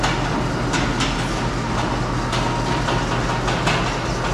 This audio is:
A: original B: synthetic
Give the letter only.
A